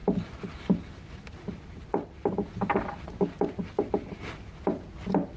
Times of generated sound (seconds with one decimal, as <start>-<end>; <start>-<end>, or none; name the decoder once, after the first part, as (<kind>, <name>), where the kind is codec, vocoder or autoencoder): none

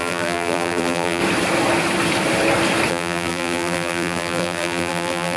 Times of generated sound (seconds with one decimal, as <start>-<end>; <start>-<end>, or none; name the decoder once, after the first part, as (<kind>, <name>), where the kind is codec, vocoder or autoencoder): 0.0-1.2 (vocoder, BigVGAN v2); 2.9-5.4

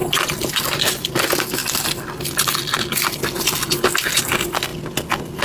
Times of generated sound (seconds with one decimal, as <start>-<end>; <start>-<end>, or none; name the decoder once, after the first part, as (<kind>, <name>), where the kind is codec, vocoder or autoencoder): 1.6-4.2 (vocoder, BigVGAN v2)

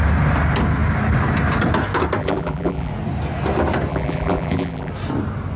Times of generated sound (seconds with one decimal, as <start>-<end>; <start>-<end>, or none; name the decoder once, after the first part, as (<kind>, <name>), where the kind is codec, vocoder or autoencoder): 2.2-2.9 (vocoder, BigVGAN v2); 3.9-4.9

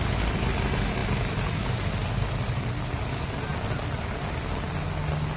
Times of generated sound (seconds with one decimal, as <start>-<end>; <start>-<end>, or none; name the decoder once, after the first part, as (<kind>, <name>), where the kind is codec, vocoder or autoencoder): none

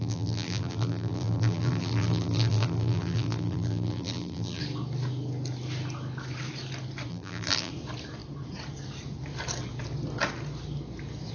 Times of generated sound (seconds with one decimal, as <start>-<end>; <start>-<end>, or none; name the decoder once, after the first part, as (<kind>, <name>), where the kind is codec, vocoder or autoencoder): 0.0-4.6 (vocoder, BigVGAN v2); 7.1-7.7

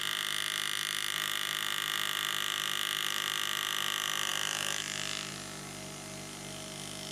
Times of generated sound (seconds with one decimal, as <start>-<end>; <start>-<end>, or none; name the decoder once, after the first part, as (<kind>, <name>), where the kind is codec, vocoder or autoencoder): none